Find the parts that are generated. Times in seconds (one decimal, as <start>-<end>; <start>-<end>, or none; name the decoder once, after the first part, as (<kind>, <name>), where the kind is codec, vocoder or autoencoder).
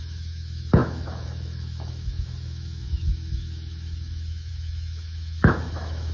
0.0-6.1 (autoencoder, DAC-VAE)